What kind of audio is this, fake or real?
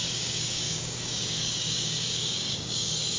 fake